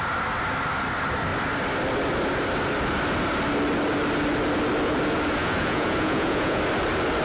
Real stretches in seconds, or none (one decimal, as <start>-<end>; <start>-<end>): 0.0-5.4; 6.6-7.2